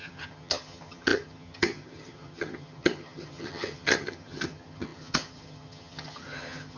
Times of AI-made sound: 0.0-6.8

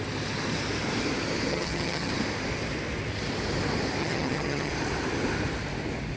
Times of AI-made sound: 1.5-2.1; 4.0-4.7